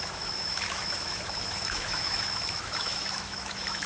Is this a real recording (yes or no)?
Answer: no